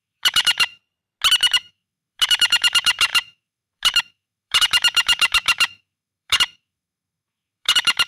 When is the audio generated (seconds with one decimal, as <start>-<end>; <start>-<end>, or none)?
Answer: 0.0-0.8; 1.4-8.1